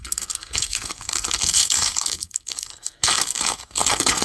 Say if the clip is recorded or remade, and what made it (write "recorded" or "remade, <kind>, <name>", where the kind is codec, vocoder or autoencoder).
remade, codec, SNAC